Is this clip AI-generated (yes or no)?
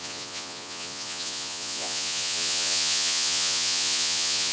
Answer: yes